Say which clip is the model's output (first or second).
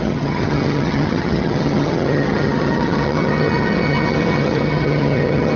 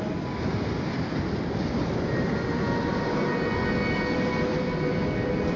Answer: first